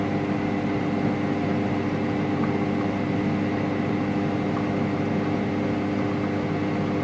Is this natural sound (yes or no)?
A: yes